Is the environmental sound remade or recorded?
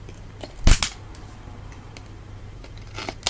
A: recorded